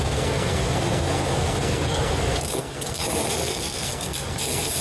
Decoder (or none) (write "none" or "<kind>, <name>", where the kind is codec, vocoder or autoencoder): codec, SNAC